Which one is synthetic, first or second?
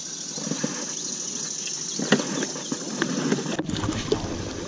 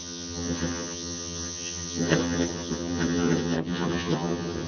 second